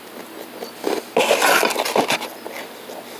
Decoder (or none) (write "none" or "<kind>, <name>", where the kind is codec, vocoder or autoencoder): none